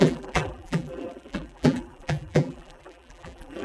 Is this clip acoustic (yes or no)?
no